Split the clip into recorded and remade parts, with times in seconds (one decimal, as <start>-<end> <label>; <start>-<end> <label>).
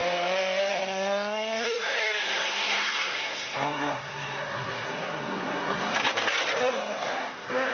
0.0-0.7 recorded; 0.7-6.0 remade; 6.0-6.6 recorded; 6.6-7.7 remade